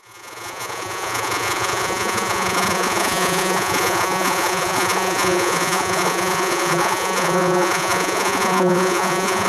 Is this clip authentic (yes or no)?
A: no